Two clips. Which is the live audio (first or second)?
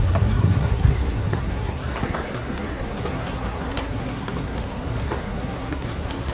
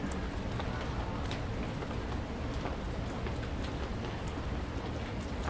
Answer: second